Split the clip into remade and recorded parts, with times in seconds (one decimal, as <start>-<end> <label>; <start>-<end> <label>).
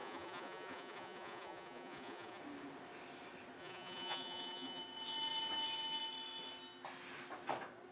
0.0-2.4 remade; 2.4-3.6 recorded; 3.6-4.8 remade; 4.8-7.9 recorded